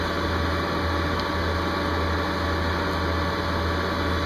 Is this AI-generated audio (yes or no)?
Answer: no